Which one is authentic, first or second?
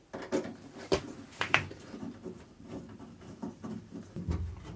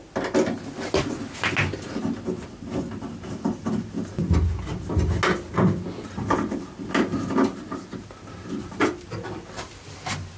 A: second